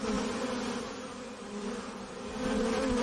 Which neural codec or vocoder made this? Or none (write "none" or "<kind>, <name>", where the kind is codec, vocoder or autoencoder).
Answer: none